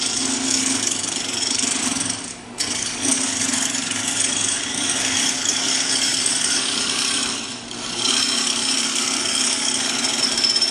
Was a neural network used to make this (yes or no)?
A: yes